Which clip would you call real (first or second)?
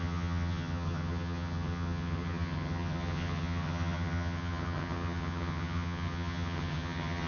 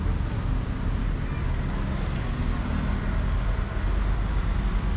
second